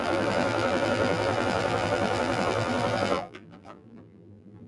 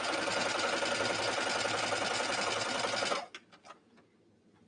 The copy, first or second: first